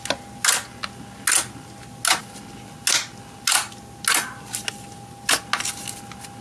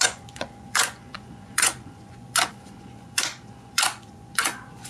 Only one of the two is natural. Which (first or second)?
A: first